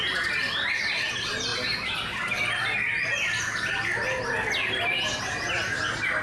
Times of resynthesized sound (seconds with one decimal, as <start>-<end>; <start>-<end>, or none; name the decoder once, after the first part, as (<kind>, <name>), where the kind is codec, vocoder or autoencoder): none